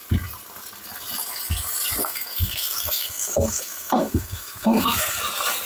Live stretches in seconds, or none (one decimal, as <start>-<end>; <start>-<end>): 0.0-2.0; 5.2-5.7

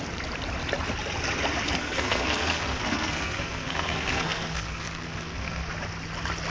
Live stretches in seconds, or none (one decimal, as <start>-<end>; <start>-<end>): 0.0-1.8; 5.7-6.5

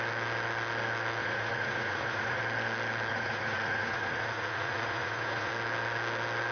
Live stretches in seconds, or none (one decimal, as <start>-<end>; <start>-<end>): 0.0-1.2; 2.4-3.1; 5.5-6.5

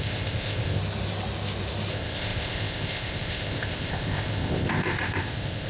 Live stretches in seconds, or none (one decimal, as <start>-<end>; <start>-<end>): 0.8-1.9